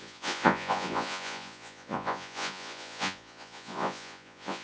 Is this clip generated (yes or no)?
yes